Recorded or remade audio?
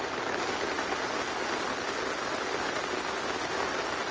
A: recorded